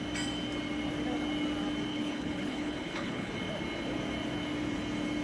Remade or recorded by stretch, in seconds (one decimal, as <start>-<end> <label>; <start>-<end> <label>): 0.0-1.9 recorded; 1.9-3.3 remade; 3.3-5.2 recorded